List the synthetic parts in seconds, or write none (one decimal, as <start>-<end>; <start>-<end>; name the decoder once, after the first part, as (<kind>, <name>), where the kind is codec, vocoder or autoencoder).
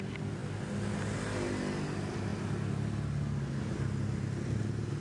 none